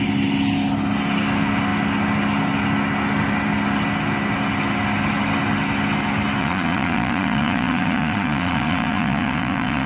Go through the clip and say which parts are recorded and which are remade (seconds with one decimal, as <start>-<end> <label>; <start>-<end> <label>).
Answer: 0.0-6.4 recorded; 6.4-9.9 remade